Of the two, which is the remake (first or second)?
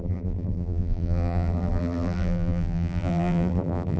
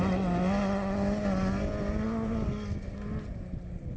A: first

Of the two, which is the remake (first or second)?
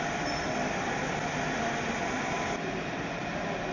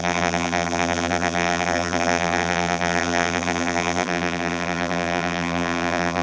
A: second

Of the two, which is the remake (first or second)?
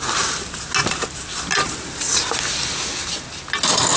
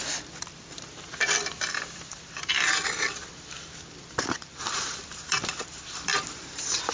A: second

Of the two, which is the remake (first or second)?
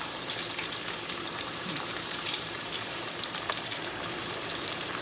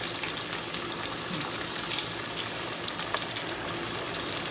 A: first